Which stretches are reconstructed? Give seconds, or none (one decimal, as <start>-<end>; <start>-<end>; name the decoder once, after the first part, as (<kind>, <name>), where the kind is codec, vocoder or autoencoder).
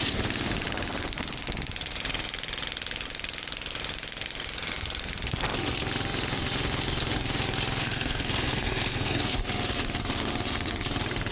7.8-9.2 (codec, SNAC)